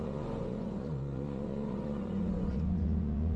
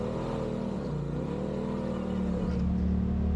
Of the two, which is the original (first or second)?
second